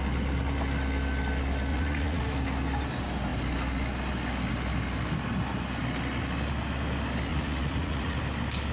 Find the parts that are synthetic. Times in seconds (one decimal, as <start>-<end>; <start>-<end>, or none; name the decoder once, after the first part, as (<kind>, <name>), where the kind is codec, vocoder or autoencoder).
1.7-2.2 (vocoder, Vocos); 7.3-8.2